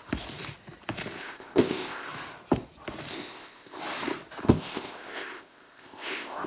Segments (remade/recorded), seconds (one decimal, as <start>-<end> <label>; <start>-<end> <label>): 0.0-1.2 recorded; 1.2-2.1 remade; 2.1-3.1 recorded; 3.1-3.8 remade; 3.8-4.4 recorded; 4.4-6.5 remade